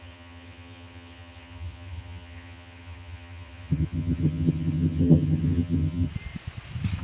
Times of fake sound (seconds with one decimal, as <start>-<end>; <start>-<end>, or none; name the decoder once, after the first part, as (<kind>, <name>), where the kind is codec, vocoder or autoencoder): 0.0-6.1 (vocoder, HiFi-GAN)

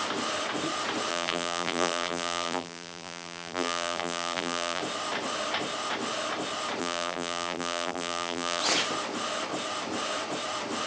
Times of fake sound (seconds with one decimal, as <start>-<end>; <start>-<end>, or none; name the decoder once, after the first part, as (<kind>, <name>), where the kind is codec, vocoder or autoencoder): 1.1-4.8 (vocoder, BigVGAN v2); 6.8-8.6

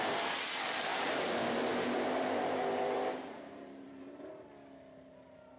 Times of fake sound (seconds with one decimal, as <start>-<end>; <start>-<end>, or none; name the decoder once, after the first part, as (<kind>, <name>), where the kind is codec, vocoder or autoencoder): 0.9-4.3 (vocoder, BigVGAN v2)

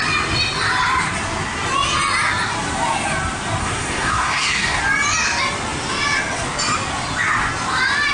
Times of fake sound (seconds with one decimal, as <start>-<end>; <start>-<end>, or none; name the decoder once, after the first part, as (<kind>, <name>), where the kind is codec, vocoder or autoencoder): 3.6-4.8 (codec, SNAC)

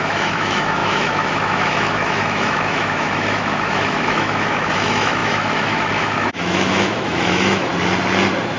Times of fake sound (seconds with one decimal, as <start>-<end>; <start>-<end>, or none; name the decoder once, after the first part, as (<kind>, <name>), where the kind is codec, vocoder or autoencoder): 0.0-7.7 (autoencoder, DAC-VAE)